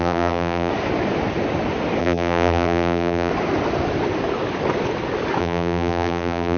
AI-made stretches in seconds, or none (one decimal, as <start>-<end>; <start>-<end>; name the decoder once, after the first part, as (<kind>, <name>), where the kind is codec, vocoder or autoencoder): 0.0-0.7 (vocoder, BigVGAN v2); 2.0-3.3; 5.4-6.6